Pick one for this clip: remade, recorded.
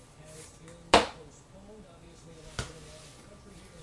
recorded